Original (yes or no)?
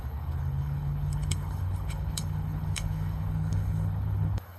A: no